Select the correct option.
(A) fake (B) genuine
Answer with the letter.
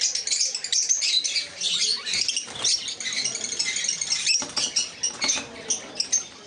B